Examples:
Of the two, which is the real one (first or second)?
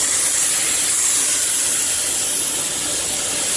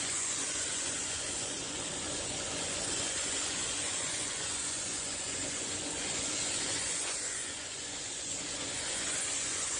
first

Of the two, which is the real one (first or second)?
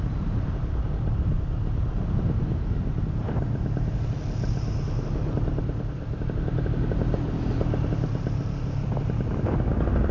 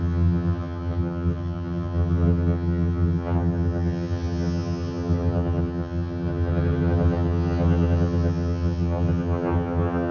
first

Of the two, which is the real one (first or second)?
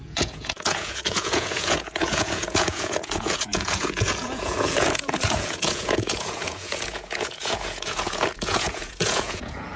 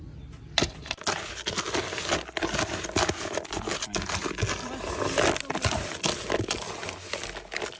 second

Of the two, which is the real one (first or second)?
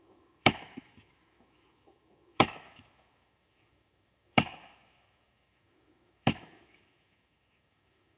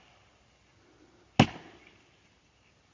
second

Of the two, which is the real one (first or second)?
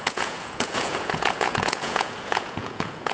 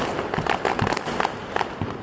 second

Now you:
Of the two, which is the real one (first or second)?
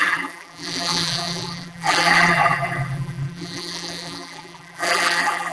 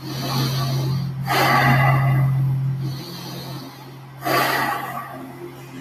second